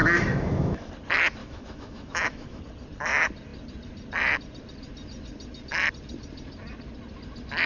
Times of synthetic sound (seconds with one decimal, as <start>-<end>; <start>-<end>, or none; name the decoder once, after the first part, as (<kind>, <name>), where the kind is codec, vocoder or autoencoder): 0.0-0.9 (autoencoder, DAC-VAE); 1.4-2.6